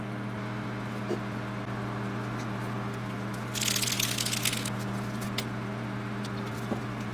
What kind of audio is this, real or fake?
real